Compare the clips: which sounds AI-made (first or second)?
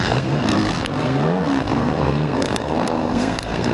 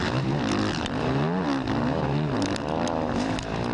first